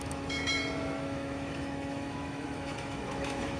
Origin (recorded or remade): remade